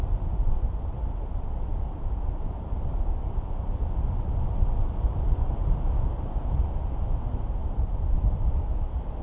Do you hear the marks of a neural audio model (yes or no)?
no